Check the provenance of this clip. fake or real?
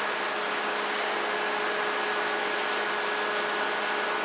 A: real